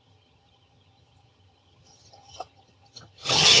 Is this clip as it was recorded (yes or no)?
no